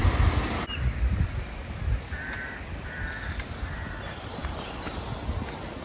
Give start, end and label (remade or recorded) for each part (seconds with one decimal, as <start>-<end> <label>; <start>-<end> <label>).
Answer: 0.0-5.8 recorded